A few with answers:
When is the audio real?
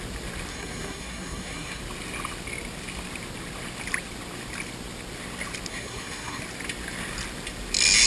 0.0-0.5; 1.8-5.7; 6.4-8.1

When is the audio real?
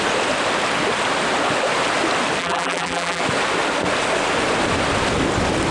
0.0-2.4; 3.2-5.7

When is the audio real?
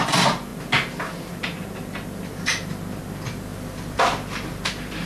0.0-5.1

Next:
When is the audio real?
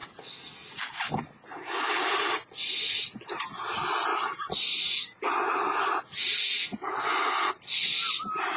0.0-8.6